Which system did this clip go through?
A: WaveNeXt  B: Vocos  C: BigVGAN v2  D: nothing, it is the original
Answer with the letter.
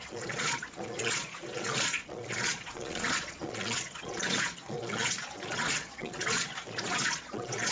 B